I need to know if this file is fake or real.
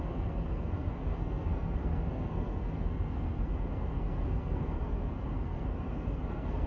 fake